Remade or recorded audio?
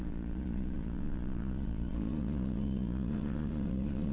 remade